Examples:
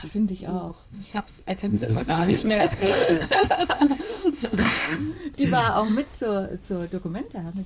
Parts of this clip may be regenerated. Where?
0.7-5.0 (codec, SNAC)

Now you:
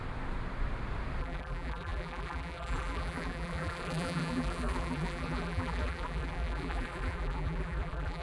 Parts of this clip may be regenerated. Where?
1.2-8.2 (vocoder, BigVGAN v2)

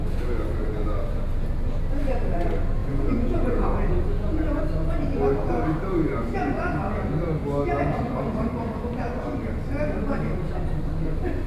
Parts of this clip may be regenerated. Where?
0.6-1.1 (vocoder, Vocos); 2.8-4.6

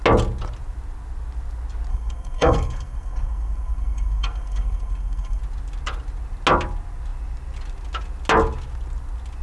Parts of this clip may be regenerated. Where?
1.9-5.4 (codec, SNAC)